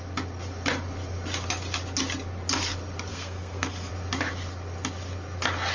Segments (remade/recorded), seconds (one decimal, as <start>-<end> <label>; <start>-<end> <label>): 0.0-3.1 recorded; 3.1-3.9 remade; 3.9-5.7 recorded